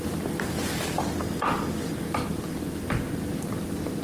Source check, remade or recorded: recorded